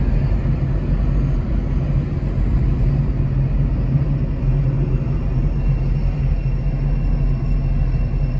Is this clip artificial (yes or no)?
no